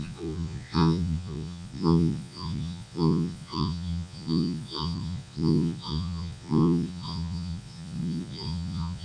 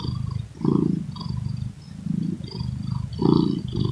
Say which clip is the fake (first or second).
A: first